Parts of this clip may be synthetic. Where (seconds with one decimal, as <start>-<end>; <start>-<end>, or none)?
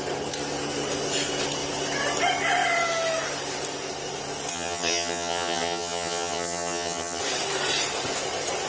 4.5-7.2